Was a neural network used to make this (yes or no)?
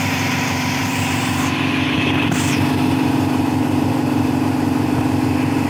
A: yes